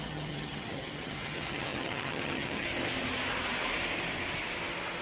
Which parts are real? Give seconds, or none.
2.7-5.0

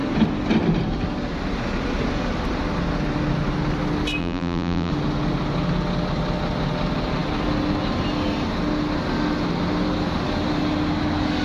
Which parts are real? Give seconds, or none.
0.0-4.2; 4.9-11.4

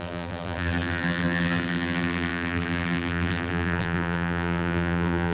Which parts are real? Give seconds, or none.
none